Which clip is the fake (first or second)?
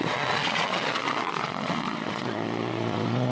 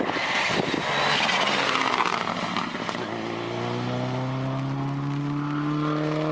first